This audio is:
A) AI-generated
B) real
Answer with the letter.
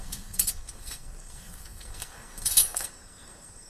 A